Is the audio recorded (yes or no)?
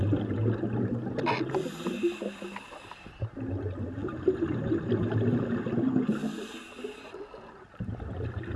yes